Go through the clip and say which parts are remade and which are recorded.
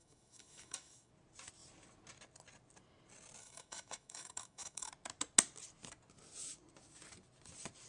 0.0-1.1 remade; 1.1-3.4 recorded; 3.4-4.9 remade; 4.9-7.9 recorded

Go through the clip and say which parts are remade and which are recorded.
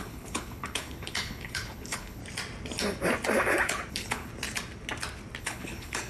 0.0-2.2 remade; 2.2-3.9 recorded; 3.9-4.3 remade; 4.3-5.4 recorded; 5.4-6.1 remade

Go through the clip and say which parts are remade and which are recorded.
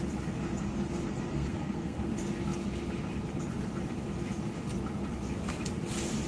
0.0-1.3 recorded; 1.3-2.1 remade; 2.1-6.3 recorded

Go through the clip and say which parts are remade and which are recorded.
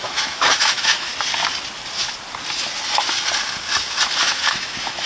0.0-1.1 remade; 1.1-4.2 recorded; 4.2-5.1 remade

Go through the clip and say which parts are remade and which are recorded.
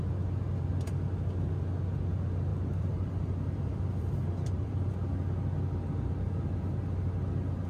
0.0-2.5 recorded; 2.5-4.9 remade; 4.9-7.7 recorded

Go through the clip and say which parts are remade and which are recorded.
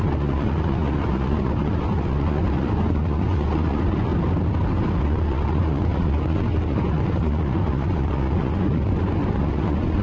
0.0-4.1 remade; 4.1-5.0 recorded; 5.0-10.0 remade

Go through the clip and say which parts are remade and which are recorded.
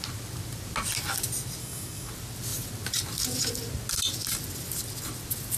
0.0-1.6 recorded; 1.6-2.1 remade; 2.1-5.6 recorded